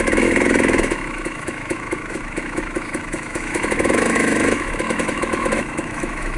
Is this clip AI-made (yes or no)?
yes